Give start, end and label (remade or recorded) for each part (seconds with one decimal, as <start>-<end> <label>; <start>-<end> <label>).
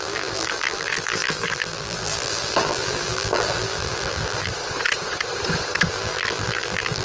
0.0-4.5 remade; 4.5-5.9 recorded; 5.9-7.0 remade